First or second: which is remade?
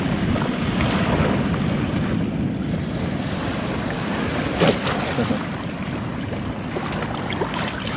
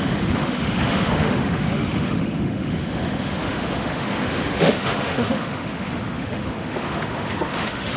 second